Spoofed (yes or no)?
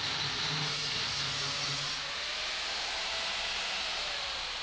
no